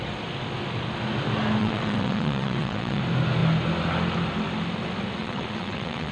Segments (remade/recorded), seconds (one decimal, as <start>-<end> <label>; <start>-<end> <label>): 0.0-1.6 recorded; 1.6-3.0 remade; 3.0-5.2 recorded; 5.2-6.1 remade